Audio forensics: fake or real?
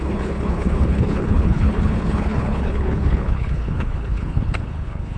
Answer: fake